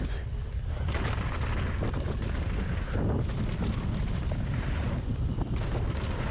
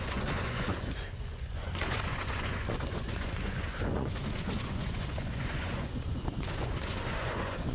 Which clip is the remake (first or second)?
second